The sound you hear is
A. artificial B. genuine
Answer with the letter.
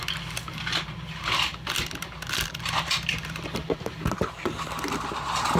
B